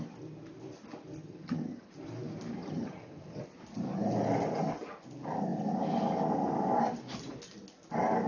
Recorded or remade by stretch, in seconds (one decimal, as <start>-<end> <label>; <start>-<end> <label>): 0.0-1.2 recorded; 1.2-1.9 remade; 1.9-2.6 recorded; 2.6-3.4 remade; 3.4-8.3 recorded